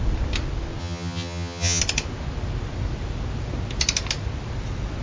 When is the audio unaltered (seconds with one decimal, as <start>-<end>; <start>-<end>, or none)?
0.0-0.8; 1.8-5.0

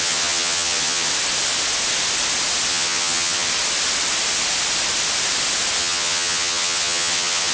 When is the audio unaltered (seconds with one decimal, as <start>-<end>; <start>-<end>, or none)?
1.1-2.7; 3.5-5.8